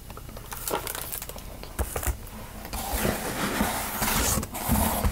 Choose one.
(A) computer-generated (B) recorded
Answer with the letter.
B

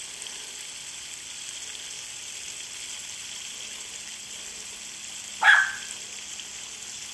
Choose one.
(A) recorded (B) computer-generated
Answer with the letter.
A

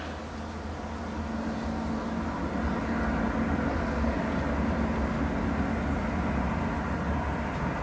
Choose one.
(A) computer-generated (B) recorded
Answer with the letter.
B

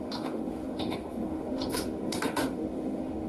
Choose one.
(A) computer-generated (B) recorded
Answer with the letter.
A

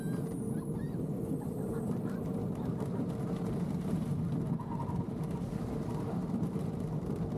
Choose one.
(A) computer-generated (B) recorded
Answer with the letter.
B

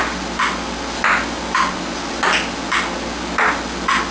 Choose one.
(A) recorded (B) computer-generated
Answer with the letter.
A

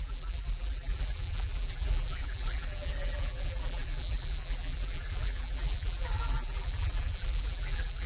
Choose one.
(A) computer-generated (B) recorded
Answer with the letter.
A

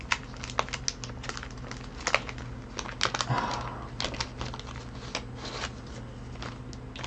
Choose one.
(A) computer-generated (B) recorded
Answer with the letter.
B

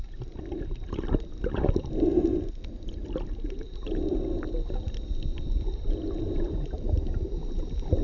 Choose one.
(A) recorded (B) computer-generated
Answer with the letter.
A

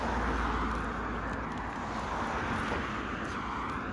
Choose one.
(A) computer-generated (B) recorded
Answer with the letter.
B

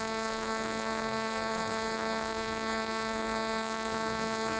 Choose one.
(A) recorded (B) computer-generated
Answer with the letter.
B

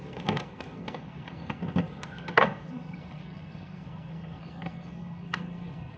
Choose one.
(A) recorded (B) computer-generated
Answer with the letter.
B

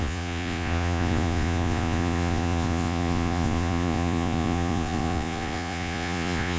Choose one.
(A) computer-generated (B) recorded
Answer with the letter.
A